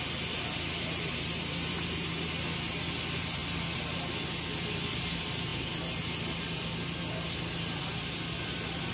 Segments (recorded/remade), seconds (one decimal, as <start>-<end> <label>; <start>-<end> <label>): 0.0-8.9 recorded